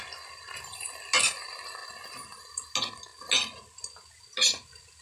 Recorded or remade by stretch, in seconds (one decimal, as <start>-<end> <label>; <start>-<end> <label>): 0.0-5.0 recorded